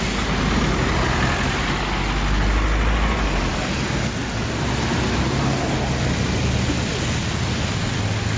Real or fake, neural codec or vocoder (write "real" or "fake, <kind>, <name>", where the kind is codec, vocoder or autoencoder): real